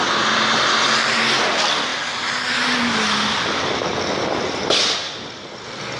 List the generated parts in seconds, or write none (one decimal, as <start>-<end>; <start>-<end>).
5.0-5.6